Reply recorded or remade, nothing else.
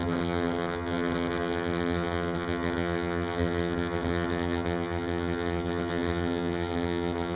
remade